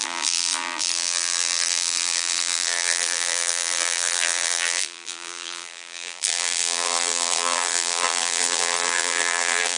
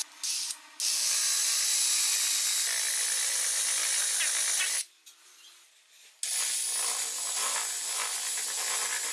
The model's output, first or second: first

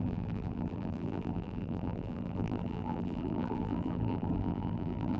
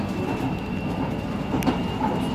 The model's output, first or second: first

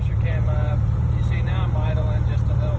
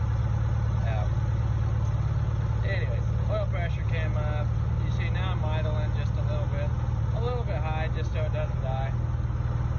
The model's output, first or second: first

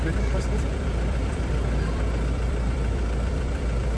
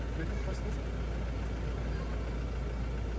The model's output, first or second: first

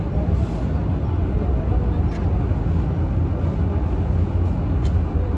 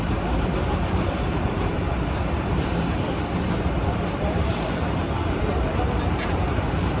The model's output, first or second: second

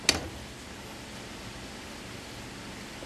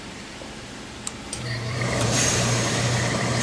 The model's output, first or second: second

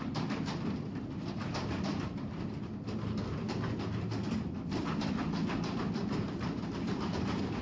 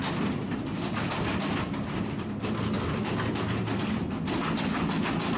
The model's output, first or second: first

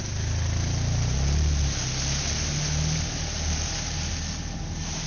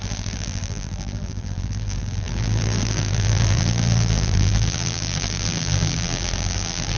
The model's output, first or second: second